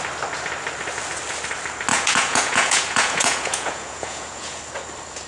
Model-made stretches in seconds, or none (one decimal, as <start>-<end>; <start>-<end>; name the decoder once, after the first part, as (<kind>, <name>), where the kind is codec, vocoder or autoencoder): 1.9-4.6 (vocoder, Vocos)